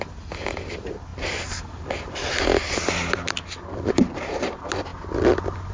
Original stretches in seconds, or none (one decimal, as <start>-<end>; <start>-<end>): 0.0-1.1; 3.3-3.7; 4.5-5.7